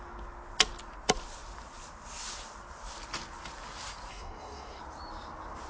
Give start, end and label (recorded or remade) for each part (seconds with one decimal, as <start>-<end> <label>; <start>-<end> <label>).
0.0-4.1 recorded; 4.1-4.8 remade; 4.8-5.7 recorded